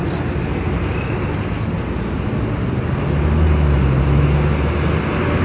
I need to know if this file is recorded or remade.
recorded